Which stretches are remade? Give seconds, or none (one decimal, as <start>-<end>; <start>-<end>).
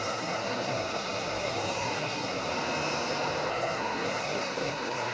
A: 0.0-2.5; 3.5-5.1